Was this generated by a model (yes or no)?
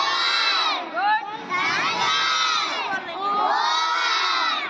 no